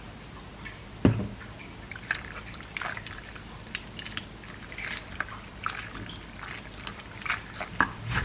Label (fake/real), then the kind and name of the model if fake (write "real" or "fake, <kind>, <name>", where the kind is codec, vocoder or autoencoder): real